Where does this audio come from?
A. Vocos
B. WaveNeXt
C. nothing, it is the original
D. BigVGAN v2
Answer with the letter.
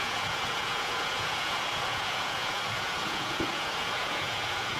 A